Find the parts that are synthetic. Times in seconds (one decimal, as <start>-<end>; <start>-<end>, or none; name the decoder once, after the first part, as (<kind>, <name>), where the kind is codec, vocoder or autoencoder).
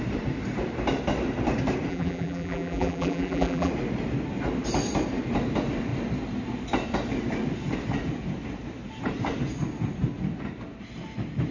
1.9-3.7 (vocoder, BigVGAN v2)